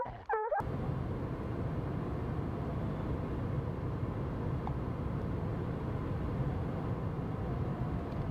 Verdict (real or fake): real